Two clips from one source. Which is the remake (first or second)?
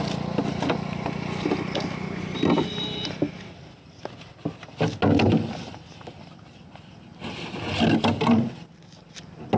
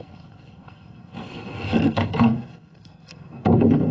second